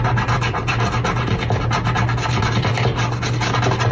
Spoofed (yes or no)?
no